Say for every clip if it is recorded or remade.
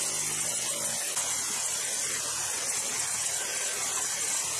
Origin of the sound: recorded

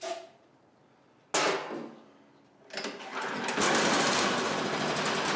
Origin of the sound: recorded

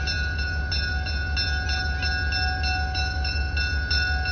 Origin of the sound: recorded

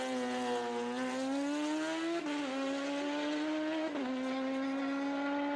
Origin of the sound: recorded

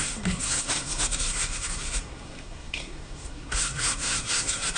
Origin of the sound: remade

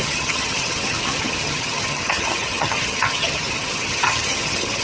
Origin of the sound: remade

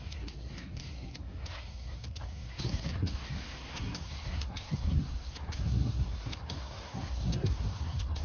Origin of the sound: remade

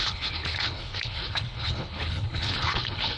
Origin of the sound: remade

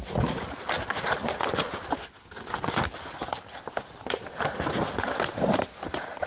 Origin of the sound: recorded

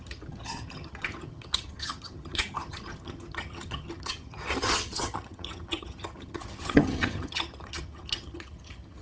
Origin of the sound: remade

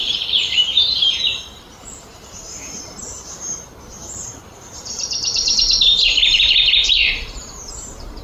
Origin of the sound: remade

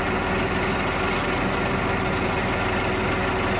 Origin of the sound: recorded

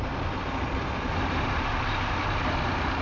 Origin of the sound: recorded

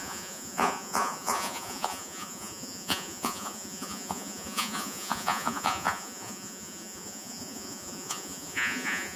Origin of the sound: remade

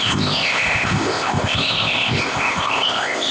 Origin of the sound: remade